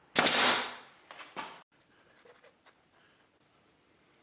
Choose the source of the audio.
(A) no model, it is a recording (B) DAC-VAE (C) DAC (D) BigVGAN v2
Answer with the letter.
A